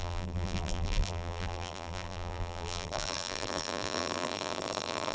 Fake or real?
fake